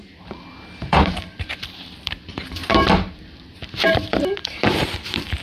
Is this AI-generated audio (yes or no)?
yes